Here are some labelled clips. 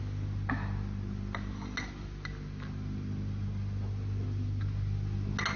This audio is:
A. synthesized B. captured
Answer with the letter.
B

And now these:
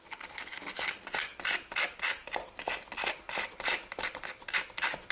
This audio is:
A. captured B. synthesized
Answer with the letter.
A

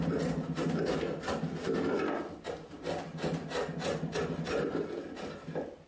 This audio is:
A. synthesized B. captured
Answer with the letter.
B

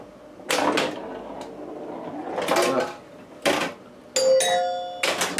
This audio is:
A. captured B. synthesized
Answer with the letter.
A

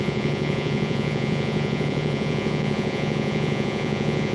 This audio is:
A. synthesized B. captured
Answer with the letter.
A